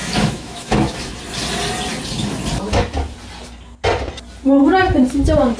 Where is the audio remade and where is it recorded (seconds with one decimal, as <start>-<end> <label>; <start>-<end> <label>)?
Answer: 0.0-1.2 remade; 1.2-5.6 recorded